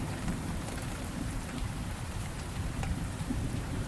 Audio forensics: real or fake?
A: fake